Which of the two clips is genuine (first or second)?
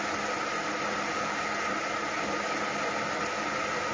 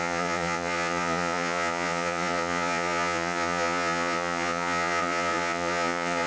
first